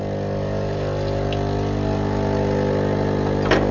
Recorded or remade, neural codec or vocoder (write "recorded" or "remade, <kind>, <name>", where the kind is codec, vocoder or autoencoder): recorded